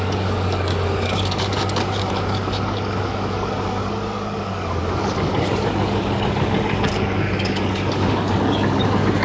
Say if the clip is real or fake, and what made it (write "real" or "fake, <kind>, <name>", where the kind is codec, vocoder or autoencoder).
fake, codec, DAC